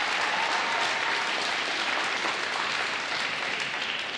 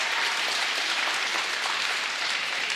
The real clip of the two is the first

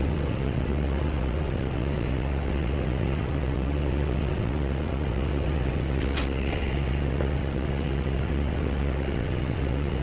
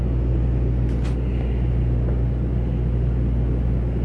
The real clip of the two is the second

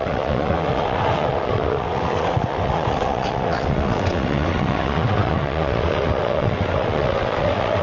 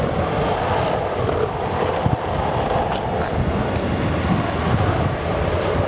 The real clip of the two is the second